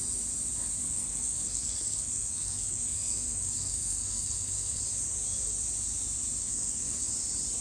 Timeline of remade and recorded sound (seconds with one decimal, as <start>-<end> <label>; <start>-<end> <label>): 0.0-0.8 recorded; 0.8-4.8 remade; 4.8-6.4 recorded; 6.4-7.1 remade; 7.1-7.6 recorded